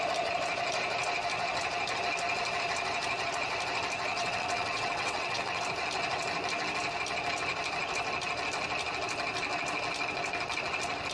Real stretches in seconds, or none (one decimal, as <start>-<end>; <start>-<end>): 0.0-4.1; 5.6-11.1